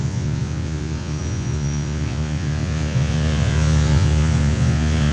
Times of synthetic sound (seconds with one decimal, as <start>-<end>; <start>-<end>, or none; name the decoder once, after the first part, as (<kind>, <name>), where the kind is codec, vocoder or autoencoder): 0.0-5.1 (vocoder, Vocos)